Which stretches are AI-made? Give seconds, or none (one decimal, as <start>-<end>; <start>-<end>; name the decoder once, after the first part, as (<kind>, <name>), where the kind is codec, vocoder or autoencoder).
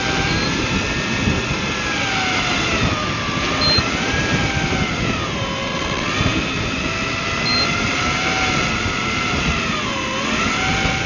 5.6-6.1 (vocoder, WaveNeXt)